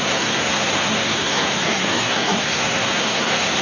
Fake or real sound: fake